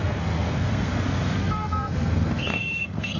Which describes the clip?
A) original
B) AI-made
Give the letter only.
B